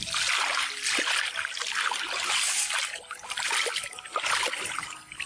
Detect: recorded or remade recorded